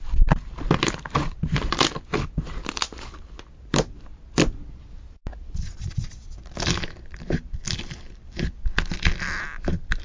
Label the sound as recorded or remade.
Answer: recorded